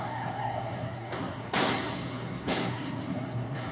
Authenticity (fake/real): fake